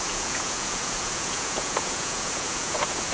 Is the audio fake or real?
fake